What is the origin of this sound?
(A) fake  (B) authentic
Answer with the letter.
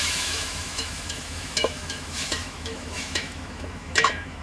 A